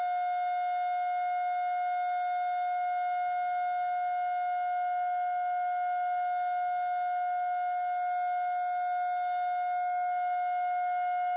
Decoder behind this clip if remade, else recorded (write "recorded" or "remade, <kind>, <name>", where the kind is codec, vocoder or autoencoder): recorded